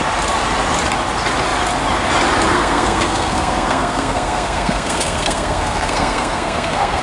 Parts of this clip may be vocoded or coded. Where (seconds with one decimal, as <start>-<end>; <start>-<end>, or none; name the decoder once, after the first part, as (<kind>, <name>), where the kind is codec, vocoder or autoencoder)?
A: 2.5-7.0 (codec, SNAC)